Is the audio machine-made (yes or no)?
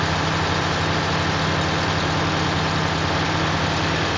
no